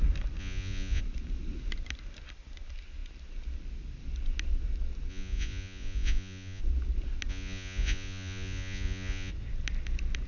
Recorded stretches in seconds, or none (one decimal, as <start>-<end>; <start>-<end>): 0.0-0.4; 1.0-5.1; 6.6-7.3; 9.3-10.3

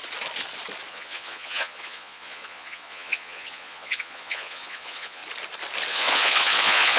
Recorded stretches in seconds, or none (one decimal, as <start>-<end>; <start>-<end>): 0.0-0.9; 5.2-5.9